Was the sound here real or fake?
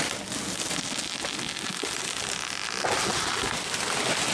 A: real